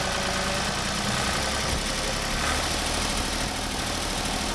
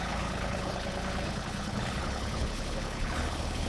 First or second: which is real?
first